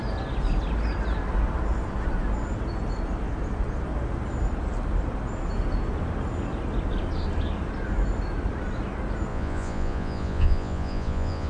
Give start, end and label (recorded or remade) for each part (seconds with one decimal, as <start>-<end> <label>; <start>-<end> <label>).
0.0-9.3 recorded; 9.3-11.5 remade